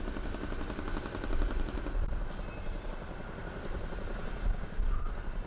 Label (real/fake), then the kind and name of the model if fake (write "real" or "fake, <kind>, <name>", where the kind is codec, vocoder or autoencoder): real